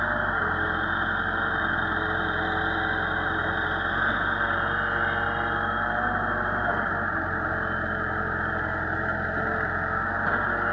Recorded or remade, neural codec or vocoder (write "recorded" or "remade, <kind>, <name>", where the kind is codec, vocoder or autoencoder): recorded